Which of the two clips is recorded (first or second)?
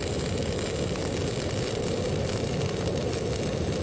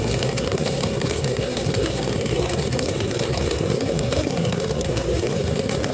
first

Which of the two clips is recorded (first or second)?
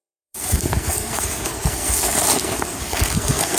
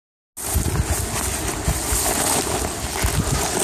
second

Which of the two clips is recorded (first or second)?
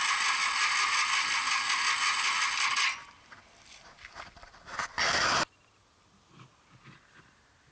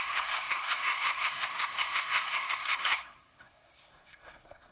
first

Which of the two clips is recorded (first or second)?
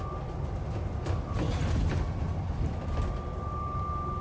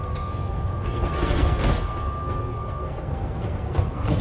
first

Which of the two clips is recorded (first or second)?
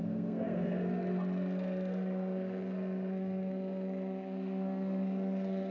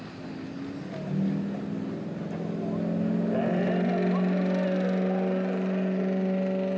second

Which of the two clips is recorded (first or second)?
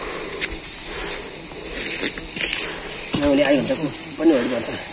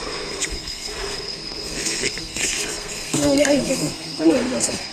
first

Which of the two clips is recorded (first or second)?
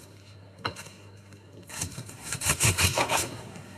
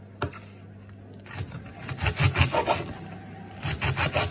second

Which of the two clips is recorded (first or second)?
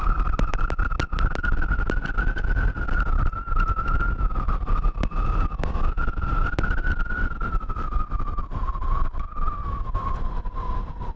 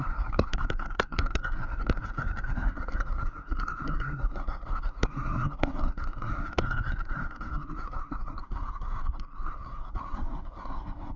first